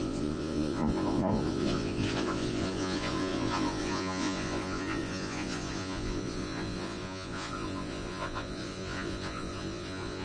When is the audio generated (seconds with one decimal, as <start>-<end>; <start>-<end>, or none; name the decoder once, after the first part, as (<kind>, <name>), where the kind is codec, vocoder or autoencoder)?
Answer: 0.0-10.2 (vocoder, Vocos)